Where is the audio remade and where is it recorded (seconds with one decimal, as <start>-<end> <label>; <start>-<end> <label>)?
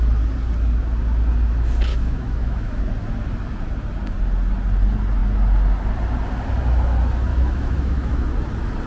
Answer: 0.0-1.9 recorded; 1.9-2.8 remade; 2.8-7.3 recorded; 7.3-8.3 remade; 8.3-8.9 recorded